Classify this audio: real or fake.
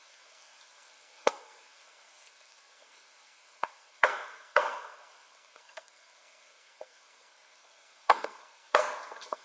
fake